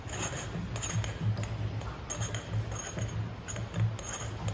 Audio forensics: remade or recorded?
recorded